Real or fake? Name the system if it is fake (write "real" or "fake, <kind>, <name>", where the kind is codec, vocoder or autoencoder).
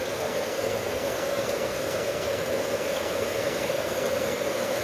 fake, codec, SNAC